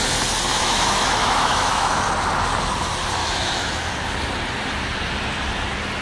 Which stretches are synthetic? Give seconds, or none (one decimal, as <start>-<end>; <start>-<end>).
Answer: 0.5-2.0; 3.2-3.9